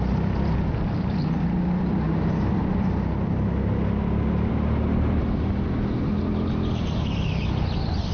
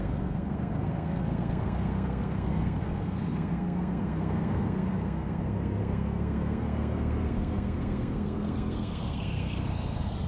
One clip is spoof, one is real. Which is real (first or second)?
first